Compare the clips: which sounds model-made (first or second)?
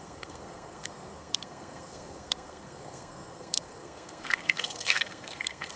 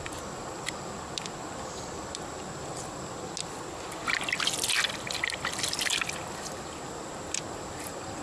first